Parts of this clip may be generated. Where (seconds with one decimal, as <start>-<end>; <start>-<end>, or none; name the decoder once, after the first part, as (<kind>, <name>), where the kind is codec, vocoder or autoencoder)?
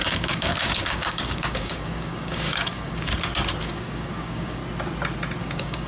0.0-3.1 (codec, DAC); 3.6-4.6; 5.4-5.9